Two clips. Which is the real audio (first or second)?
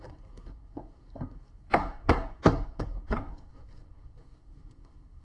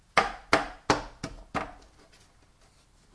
second